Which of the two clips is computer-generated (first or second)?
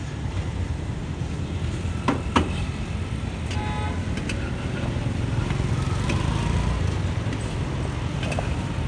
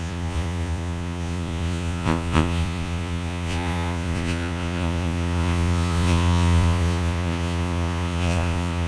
second